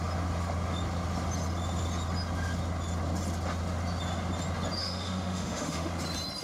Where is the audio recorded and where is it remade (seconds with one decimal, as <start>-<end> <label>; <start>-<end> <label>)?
0.0-4.8 recorded; 4.8-5.9 remade; 5.9-6.4 recorded